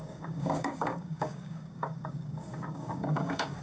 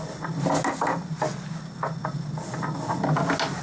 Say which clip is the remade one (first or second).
first